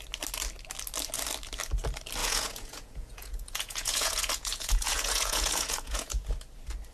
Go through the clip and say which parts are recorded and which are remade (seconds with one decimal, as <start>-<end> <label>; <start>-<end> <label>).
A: 0.0-2.2 recorded; 2.2-6.3 remade; 6.3-6.9 recorded